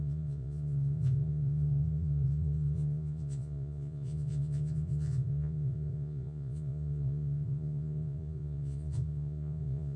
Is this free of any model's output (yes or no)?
no